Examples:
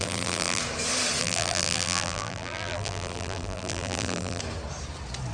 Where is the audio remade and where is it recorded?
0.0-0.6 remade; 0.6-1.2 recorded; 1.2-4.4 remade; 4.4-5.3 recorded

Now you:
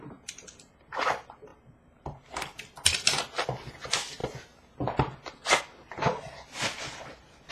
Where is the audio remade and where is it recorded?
0.0-1.5 recorded; 1.5-3.2 remade; 3.2-7.5 recorded